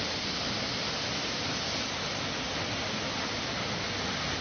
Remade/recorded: recorded